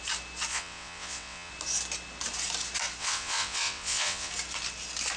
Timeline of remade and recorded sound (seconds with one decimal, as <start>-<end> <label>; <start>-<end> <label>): 0.0-0.5 recorded; 0.5-1.5 remade; 1.5-3.0 recorded; 3.0-4.3 remade; 4.3-5.2 recorded